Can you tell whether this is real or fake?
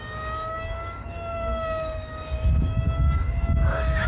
fake